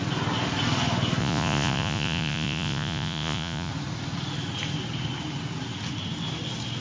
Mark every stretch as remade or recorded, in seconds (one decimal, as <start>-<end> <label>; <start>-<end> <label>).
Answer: 0.0-1.2 recorded; 1.2-3.7 remade; 3.7-6.8 recorded